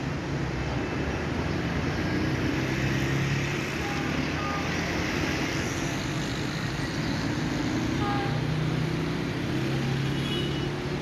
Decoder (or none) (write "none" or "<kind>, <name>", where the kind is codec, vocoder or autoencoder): none